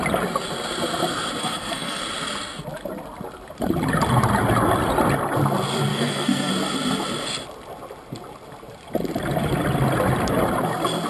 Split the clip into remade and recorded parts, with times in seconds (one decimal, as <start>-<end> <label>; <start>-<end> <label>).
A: 0.0-1.4 recorded; 1.4-2.0 remade; 2.0-5.9 recorded; 5.9-6.5 remade; 6.5-11.1 recorded